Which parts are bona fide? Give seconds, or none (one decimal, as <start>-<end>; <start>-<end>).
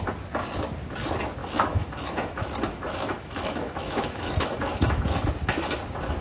0.0-1.4; 5.1-6.2